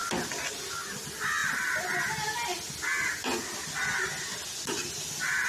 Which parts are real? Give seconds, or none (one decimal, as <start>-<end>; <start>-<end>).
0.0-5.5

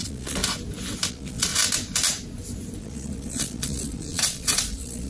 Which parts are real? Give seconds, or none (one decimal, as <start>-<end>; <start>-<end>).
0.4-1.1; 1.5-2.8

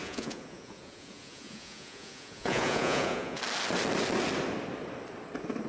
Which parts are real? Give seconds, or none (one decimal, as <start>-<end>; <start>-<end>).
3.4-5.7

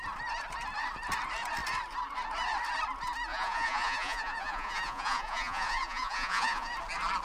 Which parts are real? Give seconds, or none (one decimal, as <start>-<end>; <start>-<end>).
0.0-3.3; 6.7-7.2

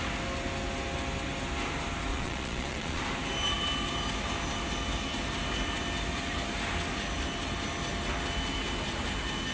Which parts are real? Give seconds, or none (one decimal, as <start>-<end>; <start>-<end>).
0.0-2.1; 3.0-9.5

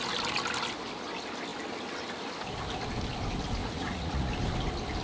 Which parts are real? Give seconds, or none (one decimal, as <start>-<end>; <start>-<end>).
0.0-3.6; 4.3-5.0

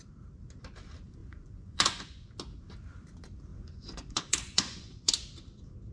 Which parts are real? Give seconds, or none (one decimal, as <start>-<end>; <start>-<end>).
0.0-1.2; 2.3-3.5; 5.1-5.9

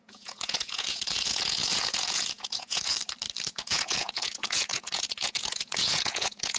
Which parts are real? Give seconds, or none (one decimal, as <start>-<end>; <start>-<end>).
2.9-3.5